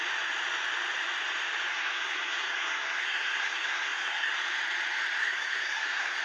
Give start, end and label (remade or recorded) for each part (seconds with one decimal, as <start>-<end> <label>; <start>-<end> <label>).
0.0-1.7 recorded; 1.7-4.3 remade; 4.3-5.2 recorded; 5.2-6.2 remade